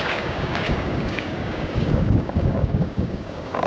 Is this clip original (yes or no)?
no